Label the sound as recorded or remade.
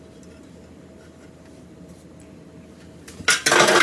recorded